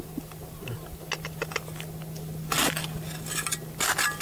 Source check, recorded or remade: recorded